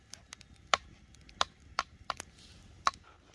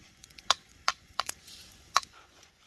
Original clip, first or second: first